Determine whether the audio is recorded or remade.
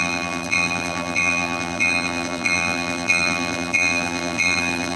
remade